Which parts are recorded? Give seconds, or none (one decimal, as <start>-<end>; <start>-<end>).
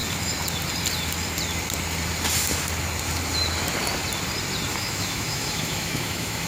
0.0-4.7